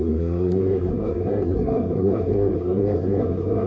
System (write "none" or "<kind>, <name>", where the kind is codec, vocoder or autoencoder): codec, SNAC